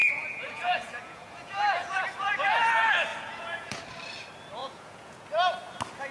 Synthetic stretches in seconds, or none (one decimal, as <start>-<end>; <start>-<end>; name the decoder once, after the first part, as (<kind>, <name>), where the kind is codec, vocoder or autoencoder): 0.0-2.0 (vocoder, Vocos); 3.1-3.8; 4.6-5.3